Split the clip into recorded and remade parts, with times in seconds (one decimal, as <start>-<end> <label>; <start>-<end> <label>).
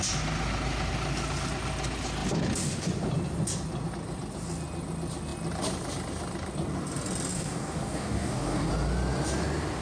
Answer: 0.0-7.3 recorded; 7.3-8.7 remade; 8.7-9.8 recorded